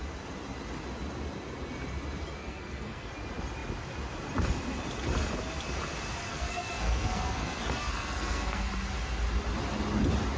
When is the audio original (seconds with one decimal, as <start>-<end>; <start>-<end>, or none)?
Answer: 0.0-2.4; 3.1-6.3; 8.7-10.4

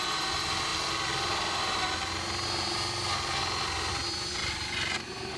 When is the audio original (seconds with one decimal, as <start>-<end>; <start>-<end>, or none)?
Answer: 0.0-5.4

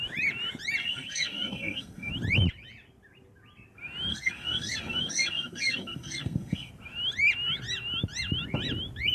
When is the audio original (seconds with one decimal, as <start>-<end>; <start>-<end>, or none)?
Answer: 0.0-0.8; 2.1-4.1; 6.7-9.1

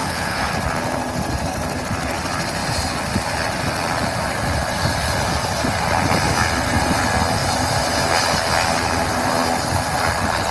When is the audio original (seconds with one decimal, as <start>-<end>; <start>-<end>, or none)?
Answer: 0.5-10.5

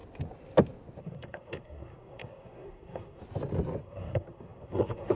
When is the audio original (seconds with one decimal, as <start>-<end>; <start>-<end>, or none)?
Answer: 0.0-1.0; 3.2-3.8

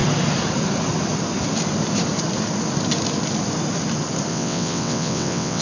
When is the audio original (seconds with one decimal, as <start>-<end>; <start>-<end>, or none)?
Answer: 0.0-4.3

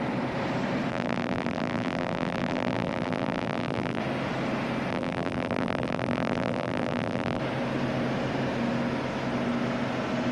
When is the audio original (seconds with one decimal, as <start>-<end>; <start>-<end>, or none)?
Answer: 0.0-0.9; 4.0-4.9; 7.4-10.3